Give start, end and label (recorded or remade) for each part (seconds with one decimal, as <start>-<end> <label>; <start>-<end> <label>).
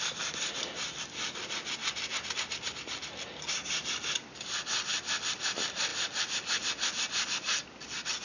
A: 0.0-5.9 remade; 5.9-7.7 recorded; 7.7-8.2 remade